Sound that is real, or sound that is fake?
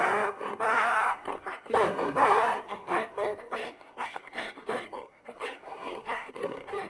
fake